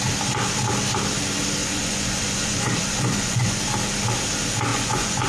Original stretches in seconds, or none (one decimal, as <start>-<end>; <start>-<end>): 0.0-1.6; 3.6-4.7